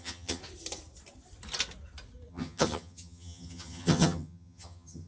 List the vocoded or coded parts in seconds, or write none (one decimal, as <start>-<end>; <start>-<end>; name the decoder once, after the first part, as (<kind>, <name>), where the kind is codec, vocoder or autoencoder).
0.0-0.4 (vocoder, HiFi-GAN); 2.3-5.1